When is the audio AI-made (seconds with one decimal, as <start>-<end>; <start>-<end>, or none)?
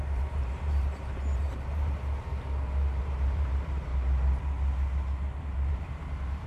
0.0-2.3; 3.0-3.9; 5.7-6.5